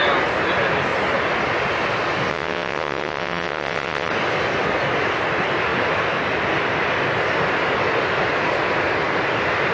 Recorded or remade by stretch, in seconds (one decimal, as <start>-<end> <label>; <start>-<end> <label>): 0.0-2.3 recorded; 2.3-4.1 remade; 4.1-9.7 recorded